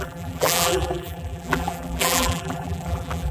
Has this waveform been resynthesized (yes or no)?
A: yes